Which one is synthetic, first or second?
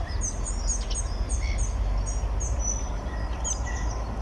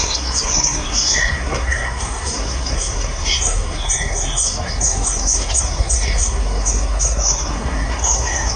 second